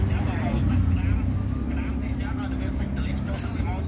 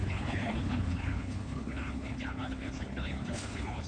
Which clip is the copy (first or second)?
second